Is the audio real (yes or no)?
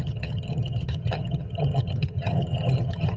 no